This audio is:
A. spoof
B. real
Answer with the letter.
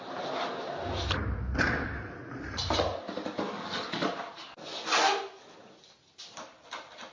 B